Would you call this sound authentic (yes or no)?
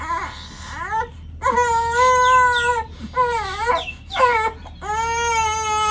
yes